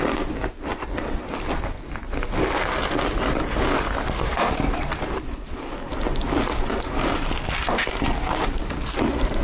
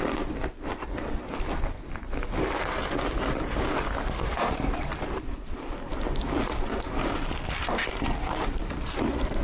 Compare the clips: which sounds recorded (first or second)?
first